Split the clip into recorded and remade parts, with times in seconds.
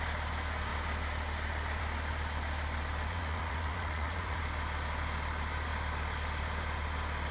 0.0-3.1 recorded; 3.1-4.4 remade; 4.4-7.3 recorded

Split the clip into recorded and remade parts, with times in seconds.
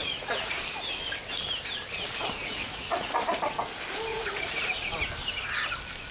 0.0-0.6 remade; 0.6-2.4 recorded; 2.4-3.1 remade; 3.1-4.1 recorded; 4.1-4.6 remade; 4.6-6.1 recorded